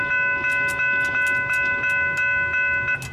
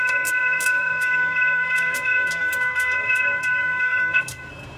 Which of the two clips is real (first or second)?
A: first